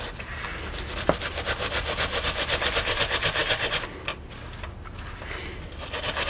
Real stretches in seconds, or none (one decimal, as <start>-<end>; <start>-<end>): 0.0-6.3

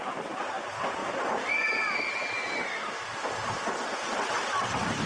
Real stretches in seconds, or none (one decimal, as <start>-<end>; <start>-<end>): 0.0-5.1

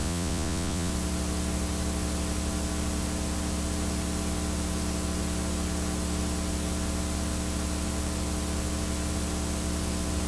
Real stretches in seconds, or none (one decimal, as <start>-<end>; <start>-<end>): 0.9-10.3

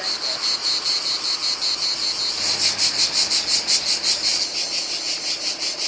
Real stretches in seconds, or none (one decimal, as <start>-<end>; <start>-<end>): 0.0-5.9

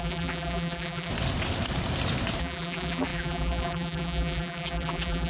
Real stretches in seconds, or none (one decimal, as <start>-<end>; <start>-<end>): 1.1-2.4

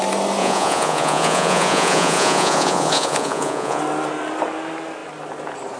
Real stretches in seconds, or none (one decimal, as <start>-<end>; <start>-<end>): 0.0-0.4; 3.8-5.8

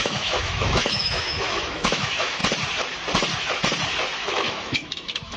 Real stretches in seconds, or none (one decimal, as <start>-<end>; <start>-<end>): 2.4-4.3

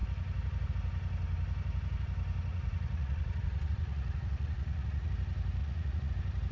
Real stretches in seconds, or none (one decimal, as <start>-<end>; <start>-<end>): 0.0-2.5; 5.1-5.6; 6.1-6.5